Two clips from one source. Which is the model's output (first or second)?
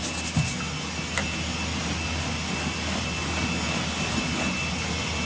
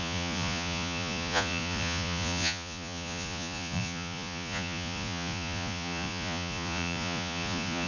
second